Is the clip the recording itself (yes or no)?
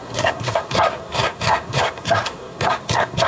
no